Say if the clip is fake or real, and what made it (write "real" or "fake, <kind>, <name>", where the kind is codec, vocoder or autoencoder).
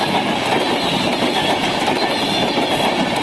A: real